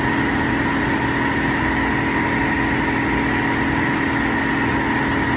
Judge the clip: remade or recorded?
recorded